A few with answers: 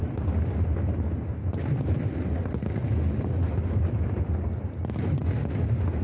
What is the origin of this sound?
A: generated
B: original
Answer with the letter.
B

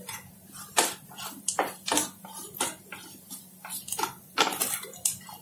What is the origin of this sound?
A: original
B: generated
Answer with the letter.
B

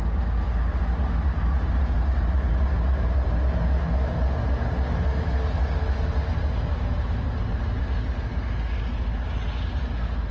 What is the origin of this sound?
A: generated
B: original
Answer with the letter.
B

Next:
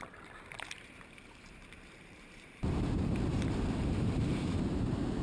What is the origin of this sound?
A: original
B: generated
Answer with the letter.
B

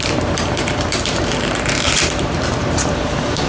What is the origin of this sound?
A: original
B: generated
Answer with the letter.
B